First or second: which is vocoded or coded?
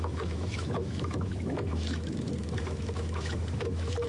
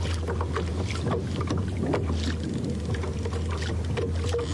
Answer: first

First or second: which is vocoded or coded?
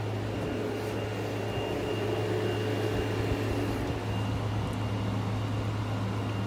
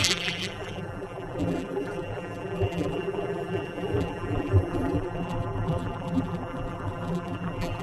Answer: second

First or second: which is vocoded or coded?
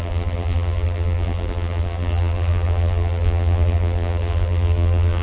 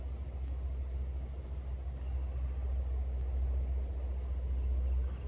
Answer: first